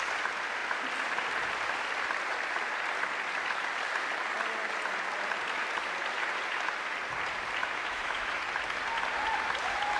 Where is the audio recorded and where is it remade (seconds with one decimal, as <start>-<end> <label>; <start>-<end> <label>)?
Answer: 0.0-7.6 recorded; 7.6-8.3 remade; 8.3-10.0 recorded